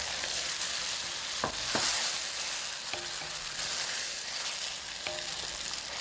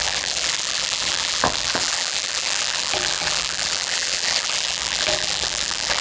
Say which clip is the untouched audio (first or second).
first